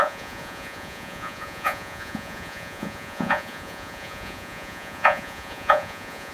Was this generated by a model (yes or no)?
yes